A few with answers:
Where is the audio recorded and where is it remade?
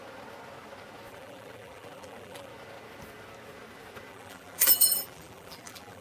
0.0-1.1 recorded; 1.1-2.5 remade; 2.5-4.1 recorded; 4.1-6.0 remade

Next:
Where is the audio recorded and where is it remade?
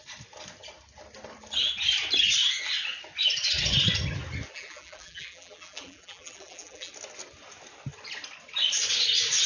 0.0-4.5 recorded; 4.5-6.9 remade; 6.9-9.5 recorded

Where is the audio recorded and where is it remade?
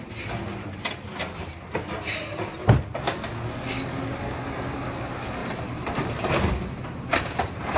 0.0-5.4 recorded; 5.4-6.3 remade; 6.3-7.8 recorded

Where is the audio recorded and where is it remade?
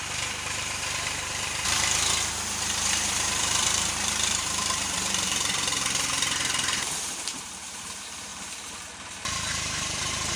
0.0-10.4 remade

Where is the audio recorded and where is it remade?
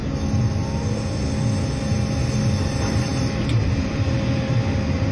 0.0-2.4 recorded; 2.4-5.1 remade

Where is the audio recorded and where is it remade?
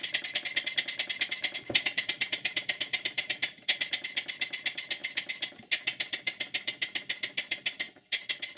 0.0-1.4 recorded; 1.4-3.8 remade; 3.8-8.6 recorded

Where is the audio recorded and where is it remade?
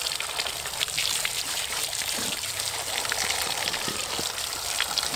0.0-1.0 recorded; 1.0-4.1 remade; 4.1-5.2 recorded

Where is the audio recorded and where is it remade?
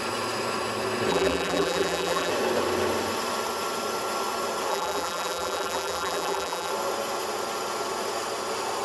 0.0-1.1 recorded; 1.1-2.3 remade; 2.3-4.7 recorded; 4.7-6.7 remade; 6.7-8.8 recorded